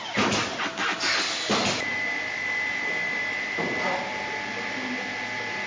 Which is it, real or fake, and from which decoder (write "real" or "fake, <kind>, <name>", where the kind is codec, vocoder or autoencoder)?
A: real